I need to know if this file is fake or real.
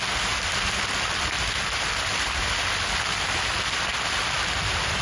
real